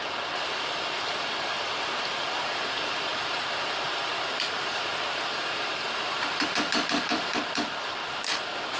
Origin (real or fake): fake